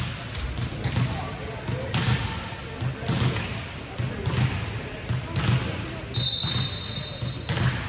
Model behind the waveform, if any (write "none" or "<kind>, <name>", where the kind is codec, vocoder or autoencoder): none